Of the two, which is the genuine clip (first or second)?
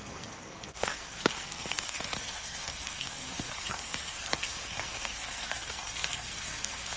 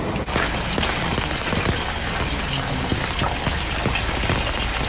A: second